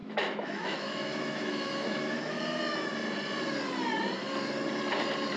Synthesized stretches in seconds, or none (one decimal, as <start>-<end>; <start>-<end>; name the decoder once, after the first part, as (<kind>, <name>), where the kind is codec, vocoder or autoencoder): 0.0-2.4 (autoencoder, DAC-VAE)